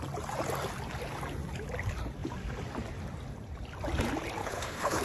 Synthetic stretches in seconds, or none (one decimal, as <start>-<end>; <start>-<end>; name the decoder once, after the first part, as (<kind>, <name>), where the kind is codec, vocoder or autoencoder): 4.4-5.0 (codec, HILCodec)

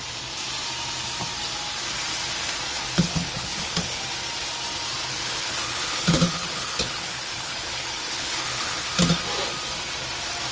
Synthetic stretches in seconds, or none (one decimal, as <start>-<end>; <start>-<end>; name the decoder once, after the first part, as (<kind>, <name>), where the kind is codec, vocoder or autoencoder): 2.7-4.0 (codec, HILCodec); 5.1-8.9

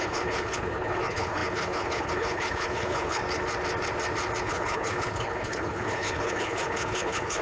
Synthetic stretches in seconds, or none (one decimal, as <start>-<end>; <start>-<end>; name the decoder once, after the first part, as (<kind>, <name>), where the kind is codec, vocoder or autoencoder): 0.0-3.2 (codec, HILCodec); 4.4-7.4

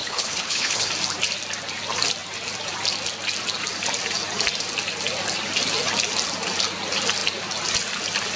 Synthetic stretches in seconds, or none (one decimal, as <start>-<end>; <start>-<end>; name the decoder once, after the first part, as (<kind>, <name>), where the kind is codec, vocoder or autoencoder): 0.0-0.9 (codec, HILCodec)

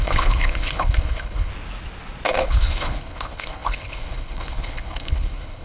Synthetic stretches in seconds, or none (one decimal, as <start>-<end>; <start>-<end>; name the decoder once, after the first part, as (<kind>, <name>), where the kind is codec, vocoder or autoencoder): 0.0-1.5 (codec, HILCodec); 2.3-5.6

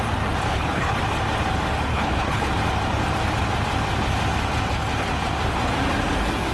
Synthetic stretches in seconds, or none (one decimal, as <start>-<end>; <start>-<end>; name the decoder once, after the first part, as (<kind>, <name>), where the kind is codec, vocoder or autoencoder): 0.5-1.0 (codec, HILCodec); 1.9-2.5

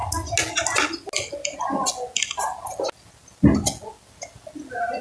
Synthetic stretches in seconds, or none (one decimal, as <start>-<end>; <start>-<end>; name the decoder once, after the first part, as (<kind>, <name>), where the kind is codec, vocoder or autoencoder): none